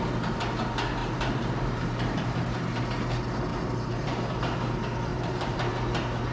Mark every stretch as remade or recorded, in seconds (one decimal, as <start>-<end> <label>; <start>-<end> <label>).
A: 0.0-1.0 recorded; 1.0-2.8 remade; 2.8-3.5 recorded; 3.5-4.4 remade; 4.4-5.1 recorded; 5.1-5.7 remade; 5.7-6.3 recorded